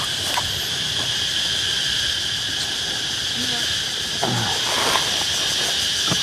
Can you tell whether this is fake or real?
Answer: real